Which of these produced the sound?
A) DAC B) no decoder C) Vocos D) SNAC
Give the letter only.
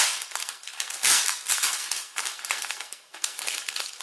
D